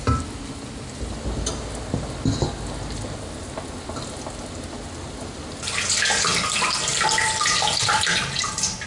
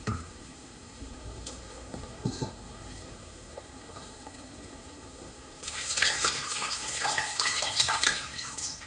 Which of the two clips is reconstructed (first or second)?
second